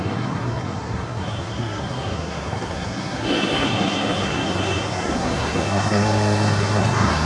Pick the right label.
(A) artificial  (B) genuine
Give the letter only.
A